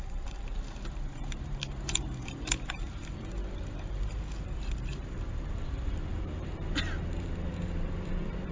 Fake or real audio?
fake